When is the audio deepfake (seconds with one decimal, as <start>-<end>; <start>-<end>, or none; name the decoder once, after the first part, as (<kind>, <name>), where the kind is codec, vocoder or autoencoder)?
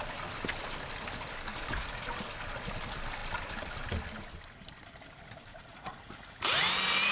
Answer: 1.5-2.1 (vocoder, Vocos); 5.5-6.4